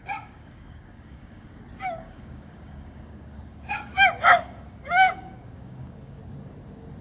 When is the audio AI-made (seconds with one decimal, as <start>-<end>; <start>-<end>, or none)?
0.0-1.6; 2.0-6.2